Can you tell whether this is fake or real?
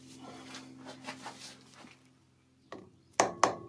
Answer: real